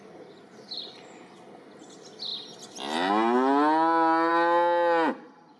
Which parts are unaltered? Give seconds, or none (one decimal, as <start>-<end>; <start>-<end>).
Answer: 0.0-5.6